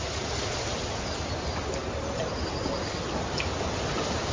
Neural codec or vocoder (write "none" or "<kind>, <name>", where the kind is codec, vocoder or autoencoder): none